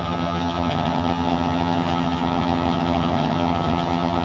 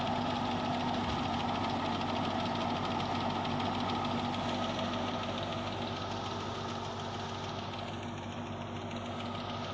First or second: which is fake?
first